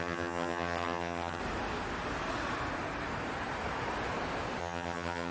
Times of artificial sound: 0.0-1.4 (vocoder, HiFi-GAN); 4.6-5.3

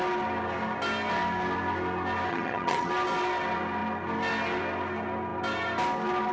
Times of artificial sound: 2.3-2.9 (vocoder, HiFi-GAN)

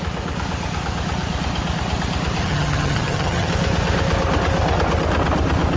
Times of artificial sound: 2.4-3.5 (vocoder, HiFi-GAN)

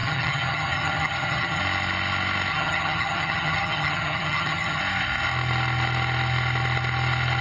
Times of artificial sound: 0.0-1.6 (vocoder, HiFi-GAN); 2.5-4.8

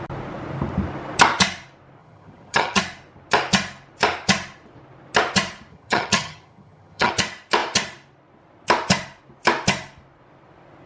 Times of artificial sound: 2.0-2.8 (vocoder, HiFi-GAN); 5.7-7.1

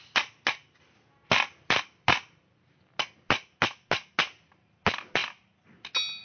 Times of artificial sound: none